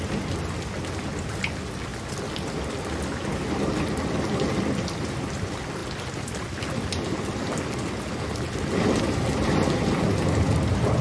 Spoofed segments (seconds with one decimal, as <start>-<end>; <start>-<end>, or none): none